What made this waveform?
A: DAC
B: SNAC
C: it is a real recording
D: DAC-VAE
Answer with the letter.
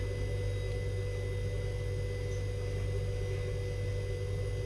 C